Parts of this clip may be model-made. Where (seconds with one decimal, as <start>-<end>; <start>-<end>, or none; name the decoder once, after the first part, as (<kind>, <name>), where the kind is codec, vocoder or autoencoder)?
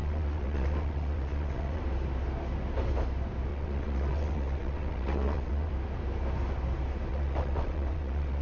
0.0-1.8 (vocoder, WaveNeXt); 3.5-5.7; 7.1-8.4